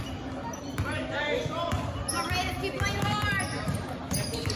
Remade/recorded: recorded